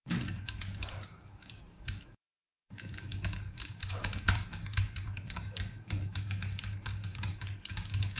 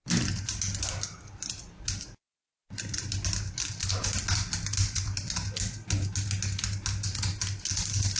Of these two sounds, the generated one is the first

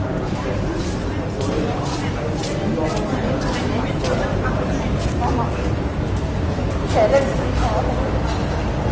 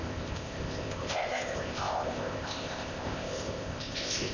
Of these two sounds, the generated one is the second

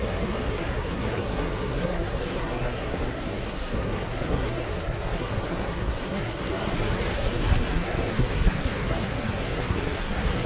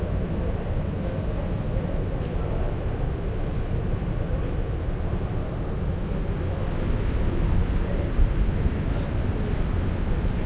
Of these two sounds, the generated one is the first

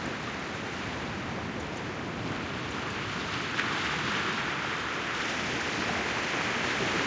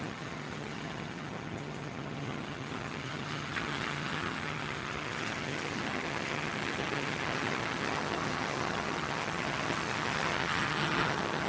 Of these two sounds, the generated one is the second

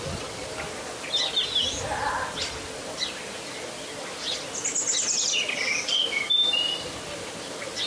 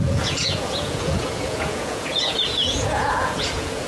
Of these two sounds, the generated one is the second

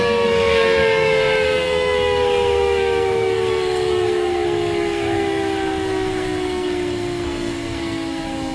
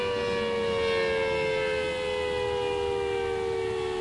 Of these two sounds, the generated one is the first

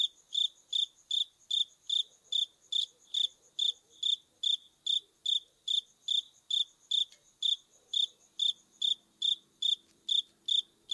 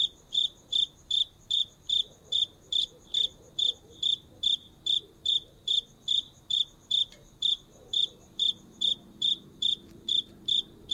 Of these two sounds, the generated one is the second